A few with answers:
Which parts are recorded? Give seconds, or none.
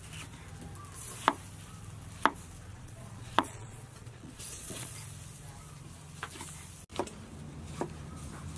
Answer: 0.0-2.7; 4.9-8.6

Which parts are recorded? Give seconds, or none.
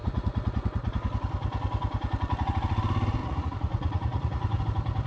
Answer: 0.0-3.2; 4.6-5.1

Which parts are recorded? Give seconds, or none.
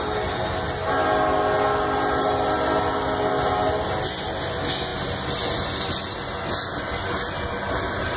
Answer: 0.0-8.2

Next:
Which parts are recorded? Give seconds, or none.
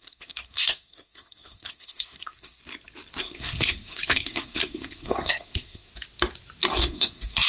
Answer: 2.6-3.2; 5.9-6.8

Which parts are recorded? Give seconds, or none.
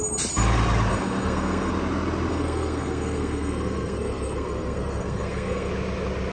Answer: 0.0-0.9; 1.7-2.3; 5.7-6.3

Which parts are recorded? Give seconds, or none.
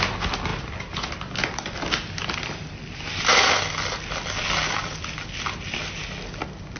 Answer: 0.0-6.8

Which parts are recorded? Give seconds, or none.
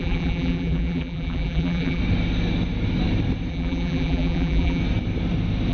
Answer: 2.0-3.5; 4.8-5.7